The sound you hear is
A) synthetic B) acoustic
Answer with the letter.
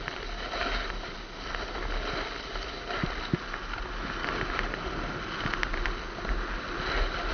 B